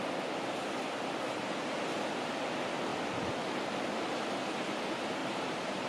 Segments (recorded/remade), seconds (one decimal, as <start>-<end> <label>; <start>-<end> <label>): 0.0-5.2 recorded; 5.2-5.9 remade

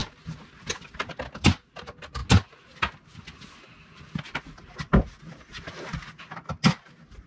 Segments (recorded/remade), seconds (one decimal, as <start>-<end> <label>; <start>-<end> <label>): 0.0-7.3 recorded

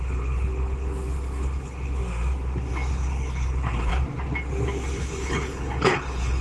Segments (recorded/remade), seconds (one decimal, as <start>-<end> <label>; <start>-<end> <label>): 0.0-2.0 remade; 2.0-2.9 recorded; 2.9-3.9 remade; 3.9-5.0 recorded; 5.0-6.4 remade

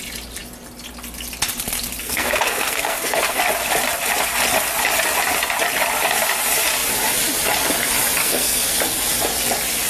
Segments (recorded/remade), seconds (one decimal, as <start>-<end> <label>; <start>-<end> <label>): 0.0-2.0 recorded; 2.0-3.4 remade; 3.4-8.2 recorded; 8.2-8.8 remade; 8.8-9.9 recorded

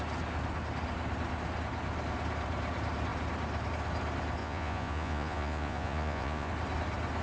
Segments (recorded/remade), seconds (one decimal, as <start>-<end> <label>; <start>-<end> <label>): 0.0-4.4 recorded; 4.4-6.5 remade; 6.5-7.2 recorded

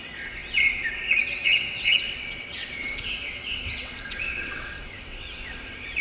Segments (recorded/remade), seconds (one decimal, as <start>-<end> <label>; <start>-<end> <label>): 0.0-6.0 remade